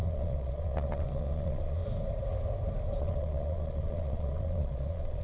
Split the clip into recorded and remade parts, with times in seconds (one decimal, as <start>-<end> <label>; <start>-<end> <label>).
0.0-1.8 remade; 1.8-3.0 recorded; 3.0-5.2 remade